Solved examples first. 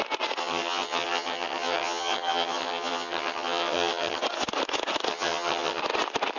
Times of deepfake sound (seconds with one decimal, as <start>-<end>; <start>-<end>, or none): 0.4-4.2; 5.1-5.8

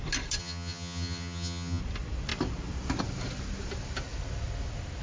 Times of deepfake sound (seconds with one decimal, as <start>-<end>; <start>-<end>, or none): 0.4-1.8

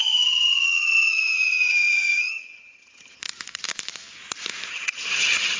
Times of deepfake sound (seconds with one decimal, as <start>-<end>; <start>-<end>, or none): 0.0-3.2; 4.7-5.6

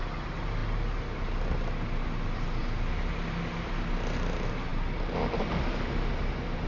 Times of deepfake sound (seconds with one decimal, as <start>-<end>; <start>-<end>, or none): none